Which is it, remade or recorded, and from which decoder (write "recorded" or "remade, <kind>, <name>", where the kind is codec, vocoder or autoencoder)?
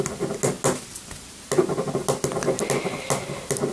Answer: recorded